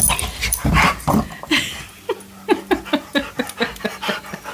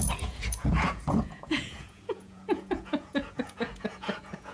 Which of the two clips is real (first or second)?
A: first